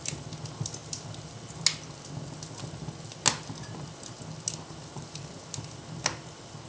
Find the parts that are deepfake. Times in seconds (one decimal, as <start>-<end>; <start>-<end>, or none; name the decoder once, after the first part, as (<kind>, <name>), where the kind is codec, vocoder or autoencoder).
none